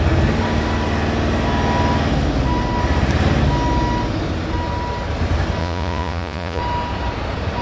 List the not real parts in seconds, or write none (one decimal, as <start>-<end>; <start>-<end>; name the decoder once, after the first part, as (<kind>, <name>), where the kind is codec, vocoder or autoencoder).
5.6-6.6 (vocoder, Vocos)